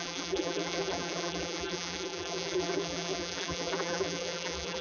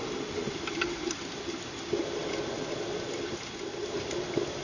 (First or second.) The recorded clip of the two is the second